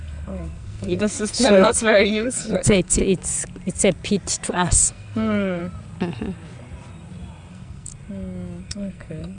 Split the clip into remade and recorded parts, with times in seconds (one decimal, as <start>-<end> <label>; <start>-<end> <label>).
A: 0.0-3.0 remade; 3.0-4.5 recorded; 4.5-5.6 remade; 5.6-7.5 recorded; 7.5-7.9 remade; 7.9-8.6 recorded; 8.6-9.4 remade